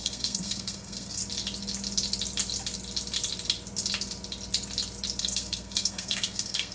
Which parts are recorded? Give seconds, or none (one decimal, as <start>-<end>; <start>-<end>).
1.2-5.2